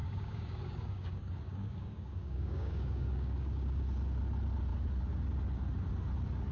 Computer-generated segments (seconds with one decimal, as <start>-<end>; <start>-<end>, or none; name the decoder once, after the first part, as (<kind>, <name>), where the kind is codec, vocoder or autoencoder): 0.0-3.8 (codec, DAC)